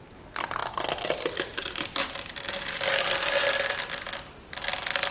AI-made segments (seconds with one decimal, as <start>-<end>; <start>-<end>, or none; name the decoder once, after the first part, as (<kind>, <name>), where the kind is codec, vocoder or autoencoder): none